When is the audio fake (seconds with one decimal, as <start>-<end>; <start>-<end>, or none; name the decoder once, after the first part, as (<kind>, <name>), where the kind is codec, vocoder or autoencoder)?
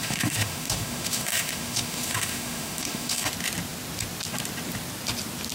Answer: 0.0-3.3 (autoencoder, DAC-VAE)